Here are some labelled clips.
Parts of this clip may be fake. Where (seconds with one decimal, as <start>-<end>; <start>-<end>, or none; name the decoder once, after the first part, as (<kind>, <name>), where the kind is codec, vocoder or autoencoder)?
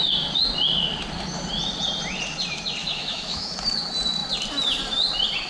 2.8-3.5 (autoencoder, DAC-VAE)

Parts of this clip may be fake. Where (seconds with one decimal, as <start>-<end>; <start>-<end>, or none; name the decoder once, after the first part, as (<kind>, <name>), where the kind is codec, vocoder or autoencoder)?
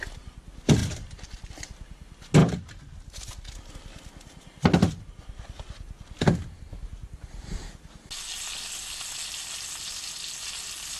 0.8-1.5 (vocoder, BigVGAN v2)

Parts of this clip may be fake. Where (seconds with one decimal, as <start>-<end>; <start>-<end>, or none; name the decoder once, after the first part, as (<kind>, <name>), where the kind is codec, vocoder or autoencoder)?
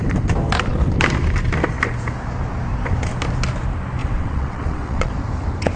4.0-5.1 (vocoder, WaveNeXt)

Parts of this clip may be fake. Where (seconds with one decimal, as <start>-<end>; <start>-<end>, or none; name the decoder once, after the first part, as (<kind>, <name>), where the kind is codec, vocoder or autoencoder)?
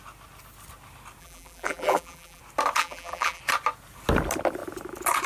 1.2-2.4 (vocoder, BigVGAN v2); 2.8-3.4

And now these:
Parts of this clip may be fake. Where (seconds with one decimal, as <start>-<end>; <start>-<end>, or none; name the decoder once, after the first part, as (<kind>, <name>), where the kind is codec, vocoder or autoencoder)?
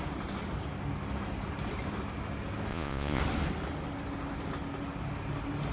2.7-3.2 (vocoder, Vocos)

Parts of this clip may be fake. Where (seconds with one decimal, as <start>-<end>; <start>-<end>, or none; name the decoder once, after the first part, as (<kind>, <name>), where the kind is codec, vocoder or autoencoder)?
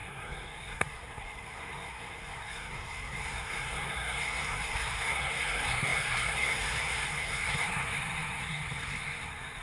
0.0-9.6 (codec, SNAC)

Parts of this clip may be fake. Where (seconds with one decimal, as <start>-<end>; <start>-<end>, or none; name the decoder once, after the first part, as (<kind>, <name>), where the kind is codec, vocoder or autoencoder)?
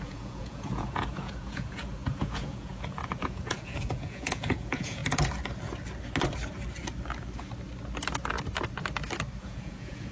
0.0-5.0 (vocoder, Vocos); 9.4-10.1